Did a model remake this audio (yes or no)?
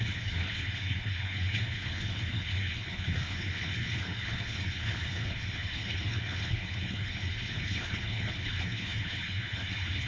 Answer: yes